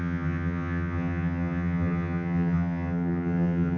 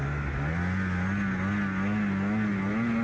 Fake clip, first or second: first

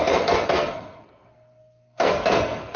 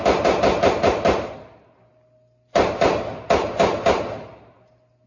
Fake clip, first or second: first